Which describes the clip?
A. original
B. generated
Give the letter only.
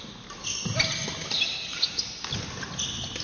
A